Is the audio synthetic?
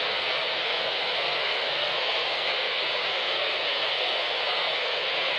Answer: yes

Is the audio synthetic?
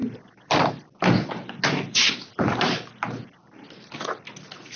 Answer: no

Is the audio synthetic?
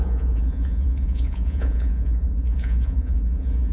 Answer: yes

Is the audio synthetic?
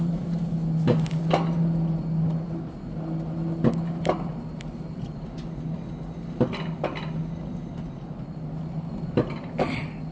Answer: no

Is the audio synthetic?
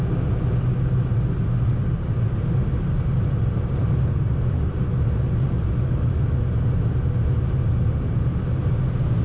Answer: no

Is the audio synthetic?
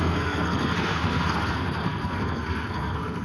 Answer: yes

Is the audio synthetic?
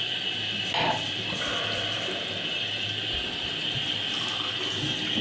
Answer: no